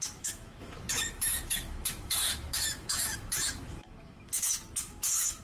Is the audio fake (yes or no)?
yes